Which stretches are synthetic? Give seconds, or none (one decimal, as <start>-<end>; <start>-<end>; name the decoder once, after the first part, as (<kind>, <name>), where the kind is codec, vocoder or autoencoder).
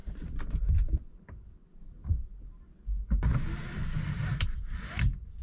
none